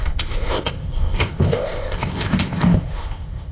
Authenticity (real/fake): fake